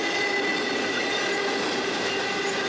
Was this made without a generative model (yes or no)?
yes